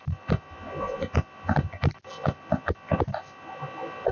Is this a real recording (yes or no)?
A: yes